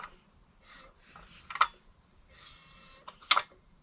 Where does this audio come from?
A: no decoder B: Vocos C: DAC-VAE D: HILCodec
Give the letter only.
A